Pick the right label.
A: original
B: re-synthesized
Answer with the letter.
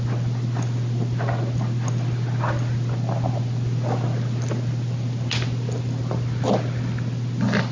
A